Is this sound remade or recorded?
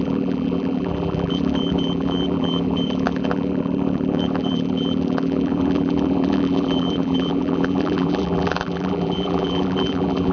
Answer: remade